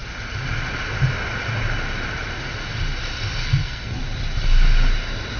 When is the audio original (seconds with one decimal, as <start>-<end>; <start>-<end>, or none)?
0.0-3.4; 4.0-5.4